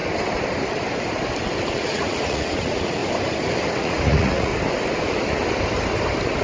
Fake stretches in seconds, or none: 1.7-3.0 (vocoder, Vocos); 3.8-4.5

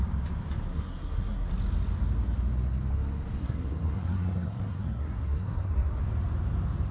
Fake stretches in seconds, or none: 0.7-1.5 (codec, SNAC); 3.4-6.0